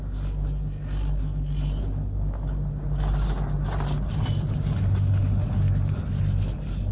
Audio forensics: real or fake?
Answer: real